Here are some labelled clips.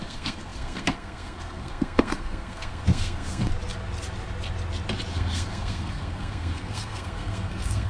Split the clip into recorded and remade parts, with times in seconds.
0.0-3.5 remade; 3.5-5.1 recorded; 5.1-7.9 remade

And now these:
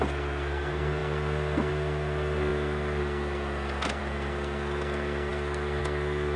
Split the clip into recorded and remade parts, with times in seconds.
0.0-6.4 remade

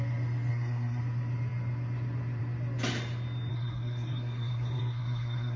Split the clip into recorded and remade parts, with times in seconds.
0.0-0.5 recorded; 0.5-1.0 remade; 1.0-3.5 recorded; 3.5-5.6 remade

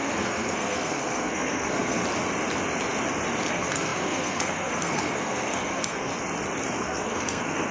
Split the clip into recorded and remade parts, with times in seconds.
0.0-2.0 remade; 2.0-3.5 recorded; 3.5-6.1 remade; 6.1-6.8 recorded; 6.8-7.7 remade